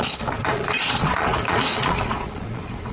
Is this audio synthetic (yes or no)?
yes